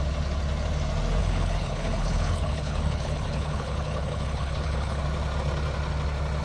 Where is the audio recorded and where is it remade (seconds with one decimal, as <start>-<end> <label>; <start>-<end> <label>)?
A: 0.0-1.2 recorded; 1.2-5.0 remade; 5.0-6.4 recorded